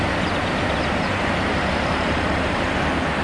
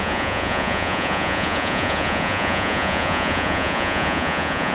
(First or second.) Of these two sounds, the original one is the first